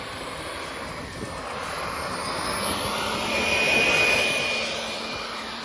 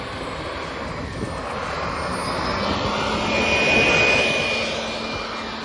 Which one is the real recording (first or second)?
second